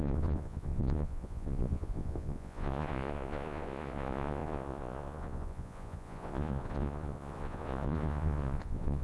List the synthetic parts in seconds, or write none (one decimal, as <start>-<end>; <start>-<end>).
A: 0.0-9.0